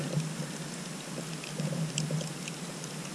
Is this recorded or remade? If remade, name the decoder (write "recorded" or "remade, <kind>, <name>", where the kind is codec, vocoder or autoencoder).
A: recorded